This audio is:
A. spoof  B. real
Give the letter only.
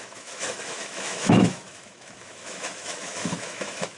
A